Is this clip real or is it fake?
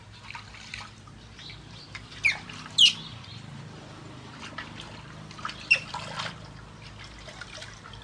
real